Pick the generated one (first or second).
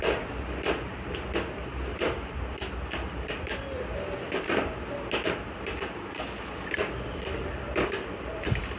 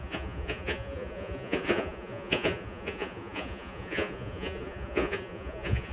second